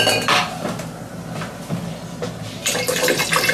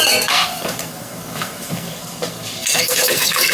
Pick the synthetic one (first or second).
second